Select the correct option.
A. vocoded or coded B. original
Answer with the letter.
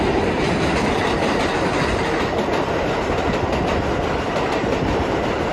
B